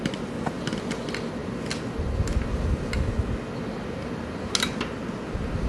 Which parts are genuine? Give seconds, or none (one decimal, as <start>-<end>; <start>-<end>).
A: 0.0-5.7